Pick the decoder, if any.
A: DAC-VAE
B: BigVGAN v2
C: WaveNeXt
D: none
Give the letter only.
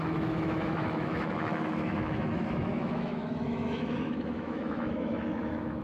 A